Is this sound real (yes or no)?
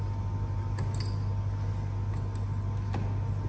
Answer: yes